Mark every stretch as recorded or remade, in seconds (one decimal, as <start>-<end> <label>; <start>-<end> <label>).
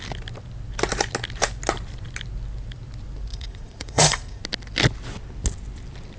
0.0-3.3 recorded; 3.3-4.4 remade; 4.4-6.2 recorded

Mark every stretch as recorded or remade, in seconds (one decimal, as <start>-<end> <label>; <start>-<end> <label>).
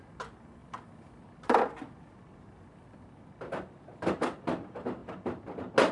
0.0-0.6 recorded; 0.6-4.1 remade; 4.1-5.9 recorded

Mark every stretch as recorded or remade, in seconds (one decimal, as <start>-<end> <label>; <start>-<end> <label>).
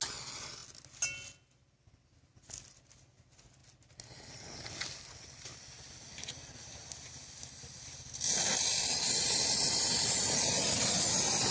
0.0-11.5 recorded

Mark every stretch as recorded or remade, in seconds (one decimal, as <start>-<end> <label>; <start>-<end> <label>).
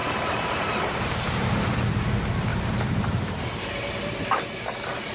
0.0-1.9 remade; 1.9-2.5 recorded; 2.5-3.4 remade; 3.4-5.1 recorded